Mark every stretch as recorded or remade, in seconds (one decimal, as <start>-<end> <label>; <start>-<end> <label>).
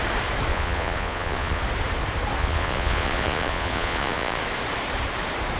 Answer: 0.0-0.5 recorded; 0.5-1.6 remade; 1.6-2.4 recorded; 2.4-4.4 remade; 4.4-5.6 recorded